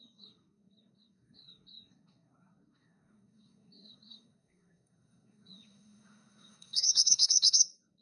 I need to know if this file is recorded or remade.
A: remade